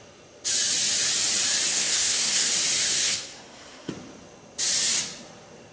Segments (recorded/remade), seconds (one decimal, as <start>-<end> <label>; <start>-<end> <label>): 0.0-1.7 recorded; 1.7-2.5 remade; 2.5-2.9 recorded; 2.9-3.9 remade; 3.9-5.7 recorded